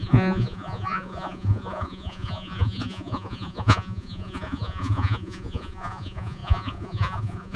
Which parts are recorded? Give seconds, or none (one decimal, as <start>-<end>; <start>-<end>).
none